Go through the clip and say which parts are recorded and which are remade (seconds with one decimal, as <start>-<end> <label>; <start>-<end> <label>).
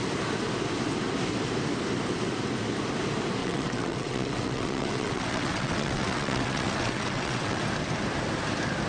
0.0-3.4 recorded; 3.4-7.6 remade; 7.6-8.9 recorded